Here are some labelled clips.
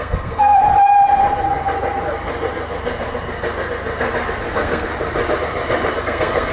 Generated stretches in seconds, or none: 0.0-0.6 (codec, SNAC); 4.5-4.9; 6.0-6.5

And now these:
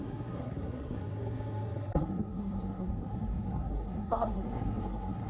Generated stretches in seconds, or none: 0.0-5.3 (codec, SNAC)

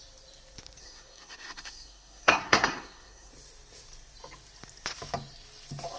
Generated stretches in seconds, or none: 0.8-3.3 (codec, SNAC)

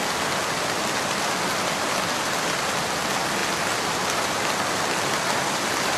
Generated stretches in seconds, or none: none

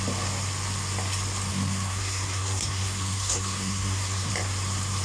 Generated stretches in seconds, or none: 1.5-4.3 (codec, SNAC)

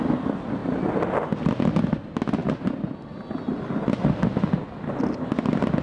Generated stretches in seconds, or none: none